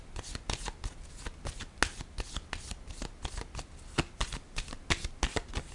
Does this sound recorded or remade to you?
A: recorded